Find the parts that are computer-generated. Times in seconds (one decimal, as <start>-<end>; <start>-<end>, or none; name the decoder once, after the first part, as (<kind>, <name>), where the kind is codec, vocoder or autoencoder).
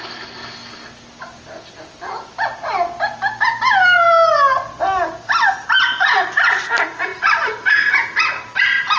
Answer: 7.1-7.9 (vocoder, BigVGAN v2)